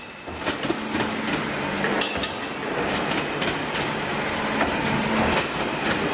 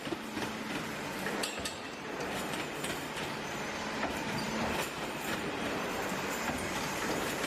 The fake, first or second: second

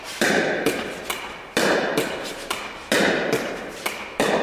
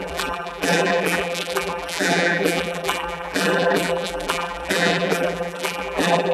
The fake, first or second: second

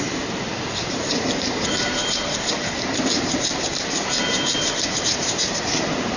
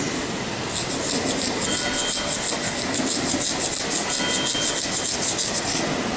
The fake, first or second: first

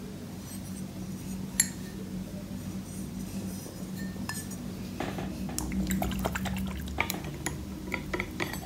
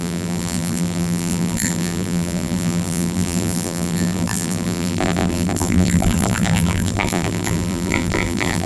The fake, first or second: second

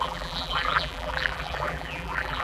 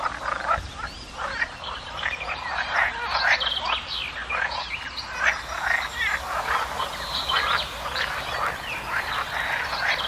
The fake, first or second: first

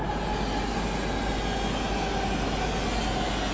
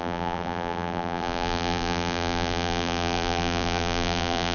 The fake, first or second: second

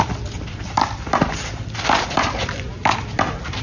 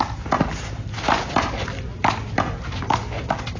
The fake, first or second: first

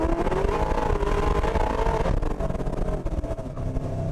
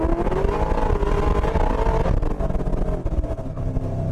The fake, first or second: first